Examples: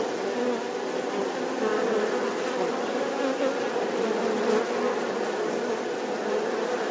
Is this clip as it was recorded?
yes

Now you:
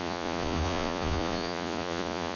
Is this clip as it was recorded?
no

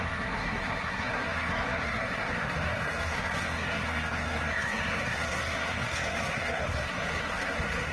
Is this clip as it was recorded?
no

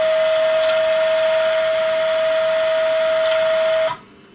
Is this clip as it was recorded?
yes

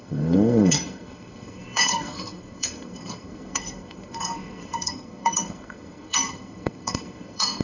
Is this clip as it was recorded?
no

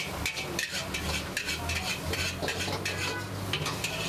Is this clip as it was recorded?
yes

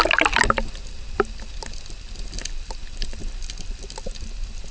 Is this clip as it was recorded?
yes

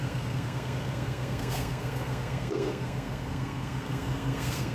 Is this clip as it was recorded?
no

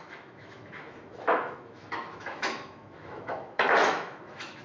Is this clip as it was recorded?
no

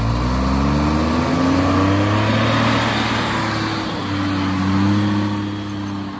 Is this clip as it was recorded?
yes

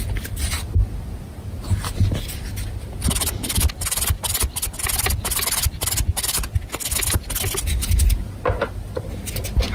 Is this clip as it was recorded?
yes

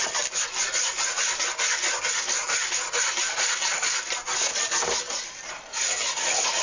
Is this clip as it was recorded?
yes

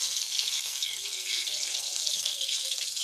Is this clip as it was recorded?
no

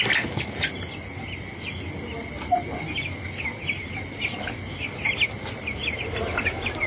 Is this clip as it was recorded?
yes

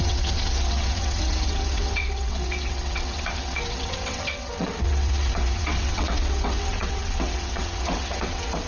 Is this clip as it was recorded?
no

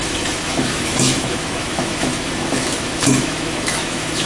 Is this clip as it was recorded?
no